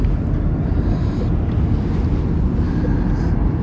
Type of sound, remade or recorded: recorded